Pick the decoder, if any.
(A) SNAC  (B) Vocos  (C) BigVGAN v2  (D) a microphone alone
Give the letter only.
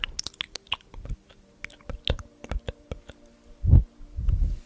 D